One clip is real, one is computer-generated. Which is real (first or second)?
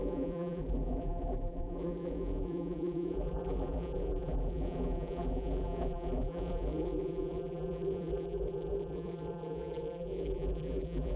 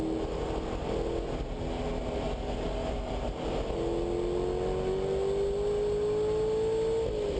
second